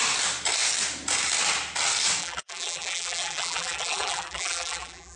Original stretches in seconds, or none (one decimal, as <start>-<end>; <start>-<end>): 0.0-2.2